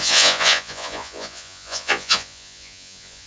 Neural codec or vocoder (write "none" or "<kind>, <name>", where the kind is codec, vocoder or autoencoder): vocoder, Vocos